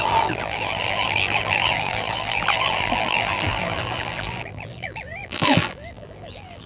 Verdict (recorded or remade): remade